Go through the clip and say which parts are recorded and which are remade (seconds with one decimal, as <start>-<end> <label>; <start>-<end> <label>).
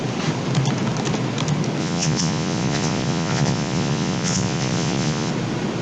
0.0-1.8 recorded; 1.8-5.3 remade; 5.3-5.8 recorded